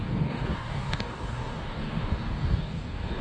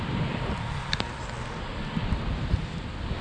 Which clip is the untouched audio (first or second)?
second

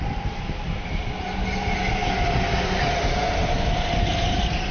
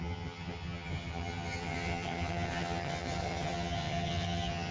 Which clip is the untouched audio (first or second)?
first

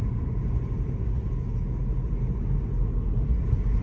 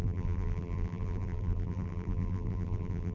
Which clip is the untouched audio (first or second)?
first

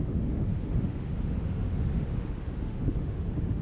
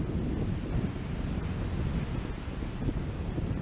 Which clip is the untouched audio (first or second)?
second